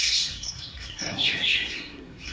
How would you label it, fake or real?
fake